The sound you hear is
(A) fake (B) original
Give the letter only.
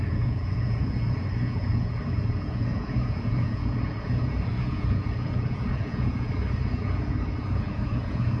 A